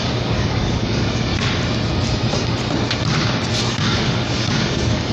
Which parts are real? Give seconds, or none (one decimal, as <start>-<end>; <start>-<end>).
1.3-3.7